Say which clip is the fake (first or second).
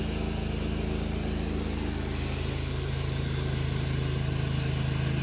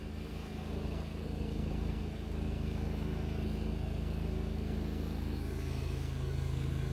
second